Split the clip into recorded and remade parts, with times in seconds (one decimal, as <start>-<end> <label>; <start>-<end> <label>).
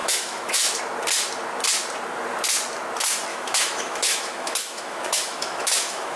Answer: 0.0-0.8 remade; 0.8-3.3 recorded; 3.3-6.2 remade